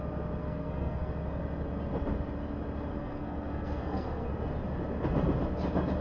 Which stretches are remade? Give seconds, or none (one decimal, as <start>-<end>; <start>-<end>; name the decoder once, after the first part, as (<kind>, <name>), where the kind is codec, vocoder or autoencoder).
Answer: 0.4-1.1 (codec, SNAC); 2.9-4.3